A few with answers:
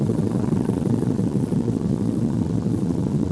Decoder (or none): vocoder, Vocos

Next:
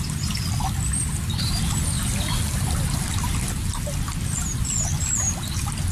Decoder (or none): none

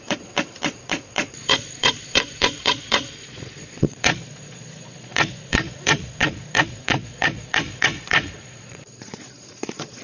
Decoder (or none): vocoder, Vocos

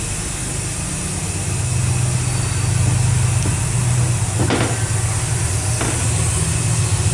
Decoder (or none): none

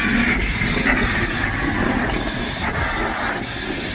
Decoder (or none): none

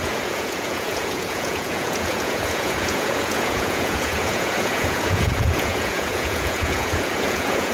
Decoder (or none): vocoder, Vocos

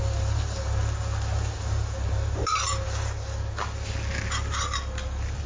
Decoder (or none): none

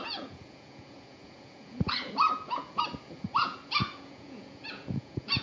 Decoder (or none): vocoder, Vocos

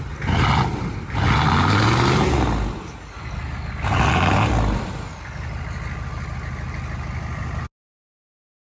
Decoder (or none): none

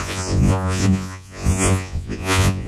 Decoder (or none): vocoder, Vocos